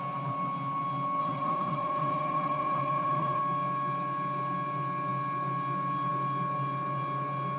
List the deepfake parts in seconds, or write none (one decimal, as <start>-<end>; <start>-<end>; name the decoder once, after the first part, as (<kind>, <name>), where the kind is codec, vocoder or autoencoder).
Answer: 1.2-3.4 (vocoder, WaveNeXt)